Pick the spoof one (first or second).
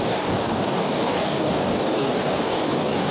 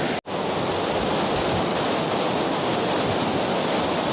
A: first